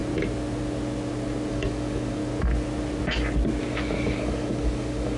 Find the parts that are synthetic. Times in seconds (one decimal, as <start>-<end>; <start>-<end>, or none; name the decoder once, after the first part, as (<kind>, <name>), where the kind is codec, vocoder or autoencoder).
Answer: 1.5-2.2 (codec, DAC); 3.6-5.2